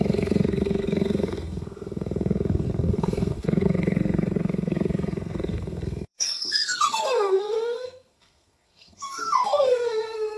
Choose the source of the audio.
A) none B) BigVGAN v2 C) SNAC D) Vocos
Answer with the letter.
C